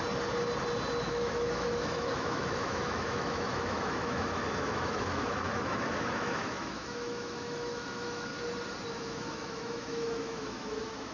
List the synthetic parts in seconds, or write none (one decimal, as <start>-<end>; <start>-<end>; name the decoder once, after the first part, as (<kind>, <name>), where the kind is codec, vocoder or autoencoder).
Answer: 1.0-8.3 (autoencoder, DAC-VAE); 8.9-11.1